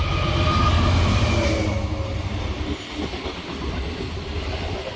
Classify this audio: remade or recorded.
recorded